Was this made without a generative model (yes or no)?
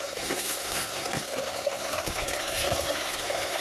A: no